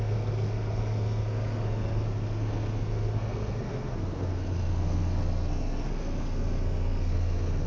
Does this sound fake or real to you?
fake